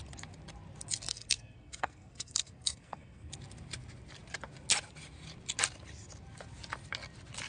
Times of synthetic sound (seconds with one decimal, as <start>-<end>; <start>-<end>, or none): 1.1-3.3